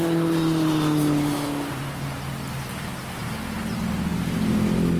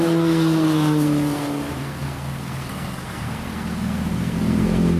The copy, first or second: second